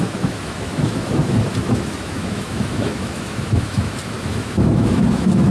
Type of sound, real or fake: fake